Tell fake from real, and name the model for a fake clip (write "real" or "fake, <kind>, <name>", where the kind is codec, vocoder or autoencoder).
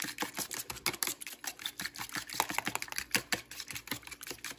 real